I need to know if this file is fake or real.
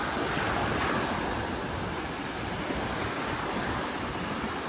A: real